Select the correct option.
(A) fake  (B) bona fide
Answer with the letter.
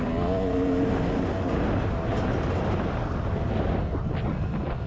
B